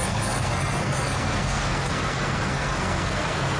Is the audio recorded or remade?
remade